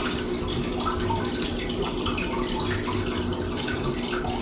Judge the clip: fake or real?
real